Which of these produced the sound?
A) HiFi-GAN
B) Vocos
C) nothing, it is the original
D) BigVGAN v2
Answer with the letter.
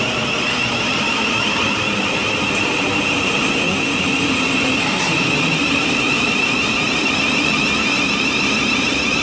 D